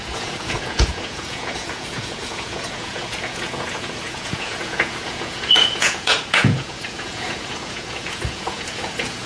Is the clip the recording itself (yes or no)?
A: no